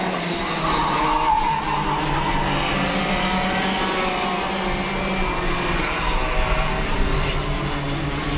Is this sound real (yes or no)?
yes